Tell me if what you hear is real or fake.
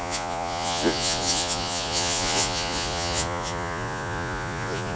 fake